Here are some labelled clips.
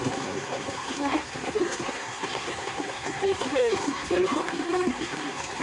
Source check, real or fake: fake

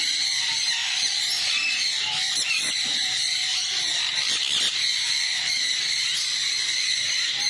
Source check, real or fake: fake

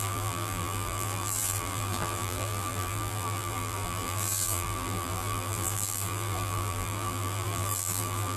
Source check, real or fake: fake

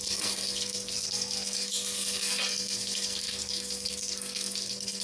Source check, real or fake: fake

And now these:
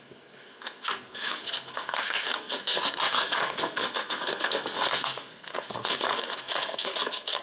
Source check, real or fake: fake